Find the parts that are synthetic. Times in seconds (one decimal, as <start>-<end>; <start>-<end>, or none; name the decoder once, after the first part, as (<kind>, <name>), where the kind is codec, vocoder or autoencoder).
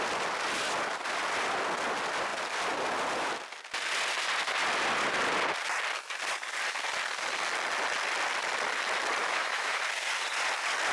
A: 9.2-9.8 (autoencoder, DAC-VAE)